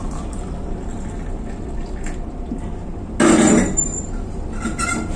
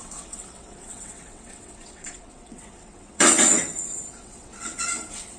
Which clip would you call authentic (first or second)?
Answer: first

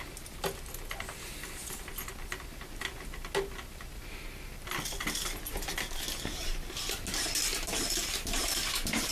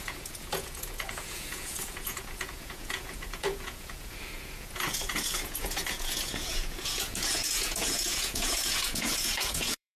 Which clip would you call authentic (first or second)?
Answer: first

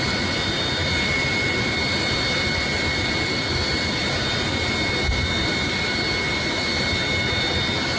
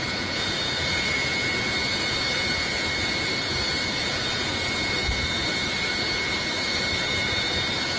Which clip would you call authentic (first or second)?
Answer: first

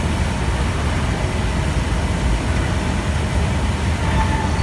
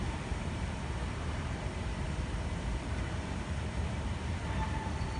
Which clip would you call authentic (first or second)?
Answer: first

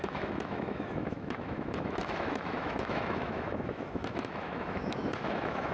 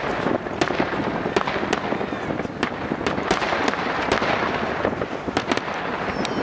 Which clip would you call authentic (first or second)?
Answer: second